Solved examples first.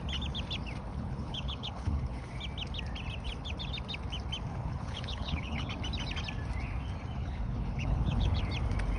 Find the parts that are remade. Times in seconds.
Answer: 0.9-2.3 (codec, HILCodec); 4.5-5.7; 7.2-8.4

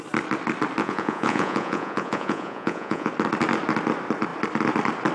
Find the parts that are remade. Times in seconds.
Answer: 0.8-3.1 (vocoder, Vocos)

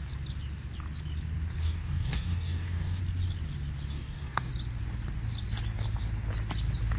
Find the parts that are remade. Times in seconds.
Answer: 1.6-3.0 (codec, DAC); 3.9-4.5

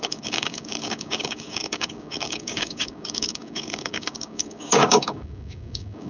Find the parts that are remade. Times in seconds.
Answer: 0.0-6.1 (codec, DAC)

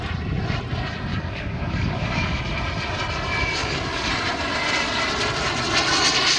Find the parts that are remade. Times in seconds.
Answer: 1.1-2.4 (codec, DAC); 3.6-4.1

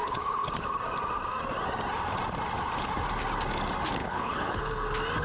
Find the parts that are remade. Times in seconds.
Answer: 0.0-0.5 (codec, HILCodec); 4.0-4.6

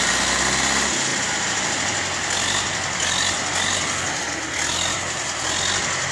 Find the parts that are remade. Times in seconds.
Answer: none